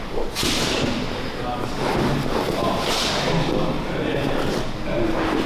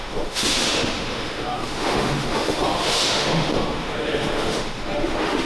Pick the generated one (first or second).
second